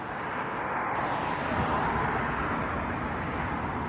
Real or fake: real